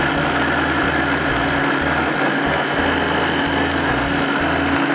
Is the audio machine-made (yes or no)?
no